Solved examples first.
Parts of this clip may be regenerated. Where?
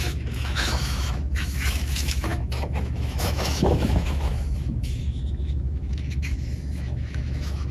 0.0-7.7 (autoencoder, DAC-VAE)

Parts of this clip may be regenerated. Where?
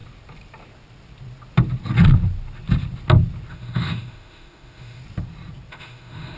3.5-5.0 (autoencoder, DAC-VAE); 5.7-6.4